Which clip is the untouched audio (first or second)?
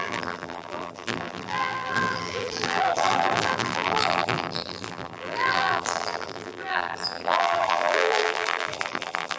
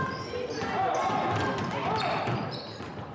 second